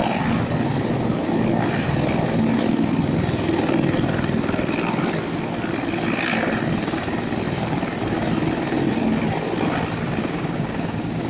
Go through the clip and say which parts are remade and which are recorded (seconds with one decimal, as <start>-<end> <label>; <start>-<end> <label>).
0.0-10.2 recorded; 10.2-11.3 remade